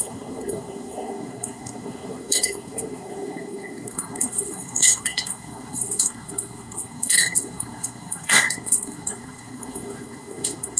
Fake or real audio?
fake